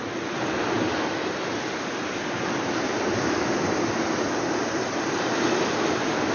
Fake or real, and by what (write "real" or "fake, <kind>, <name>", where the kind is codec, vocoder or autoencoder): real